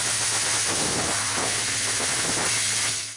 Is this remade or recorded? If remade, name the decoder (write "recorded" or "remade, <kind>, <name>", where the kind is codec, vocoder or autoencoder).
recorded